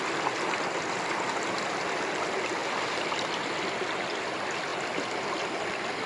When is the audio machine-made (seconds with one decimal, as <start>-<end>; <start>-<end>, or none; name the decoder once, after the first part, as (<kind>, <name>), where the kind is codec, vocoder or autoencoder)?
none